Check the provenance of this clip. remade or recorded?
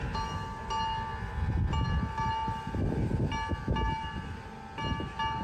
recorded